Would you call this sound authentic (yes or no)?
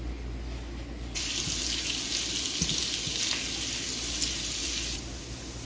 yes